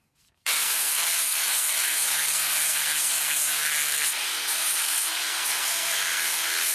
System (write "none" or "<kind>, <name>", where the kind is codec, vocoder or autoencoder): codec, SNAC